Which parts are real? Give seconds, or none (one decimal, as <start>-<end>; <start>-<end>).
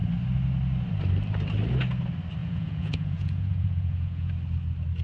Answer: 0.0-2.4; 4.3-5.0